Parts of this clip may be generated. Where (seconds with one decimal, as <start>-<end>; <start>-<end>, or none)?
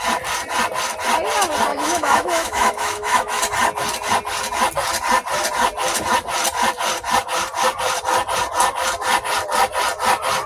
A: 1.7-3.4